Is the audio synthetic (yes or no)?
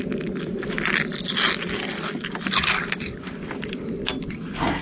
no